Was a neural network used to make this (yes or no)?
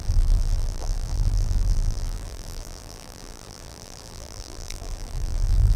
yes